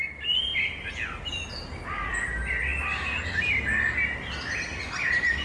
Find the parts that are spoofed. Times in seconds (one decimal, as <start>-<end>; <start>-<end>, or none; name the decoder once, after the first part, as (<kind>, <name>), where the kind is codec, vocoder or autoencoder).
none